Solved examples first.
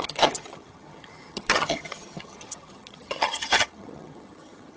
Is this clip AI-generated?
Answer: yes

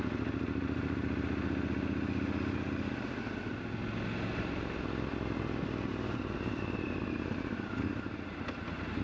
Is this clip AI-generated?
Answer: no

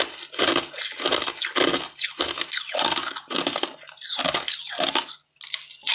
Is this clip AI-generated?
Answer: no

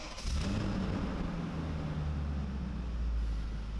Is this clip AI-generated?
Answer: no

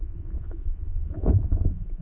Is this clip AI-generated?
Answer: yes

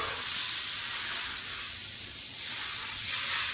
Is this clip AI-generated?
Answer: yes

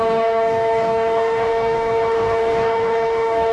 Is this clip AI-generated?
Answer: yes